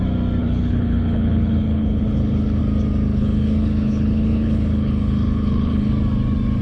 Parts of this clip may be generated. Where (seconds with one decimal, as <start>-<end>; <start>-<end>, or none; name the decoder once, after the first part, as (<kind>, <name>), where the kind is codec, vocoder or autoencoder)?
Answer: 0.4-2.6 (codec, HILCodec); 3.1-5.9